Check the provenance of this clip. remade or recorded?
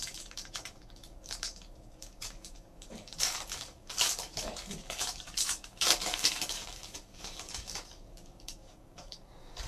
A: remade